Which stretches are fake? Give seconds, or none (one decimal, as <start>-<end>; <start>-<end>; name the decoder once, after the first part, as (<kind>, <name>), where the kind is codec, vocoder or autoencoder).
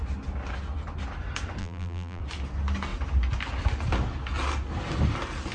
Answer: 1.6-2.2 (vocoder, BigVGAN v2)